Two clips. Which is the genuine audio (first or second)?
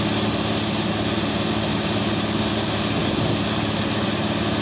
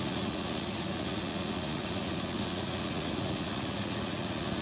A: first